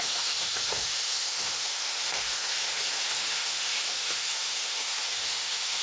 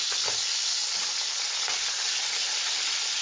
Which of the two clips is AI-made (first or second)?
first